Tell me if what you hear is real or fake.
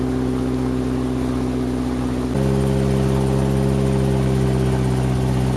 real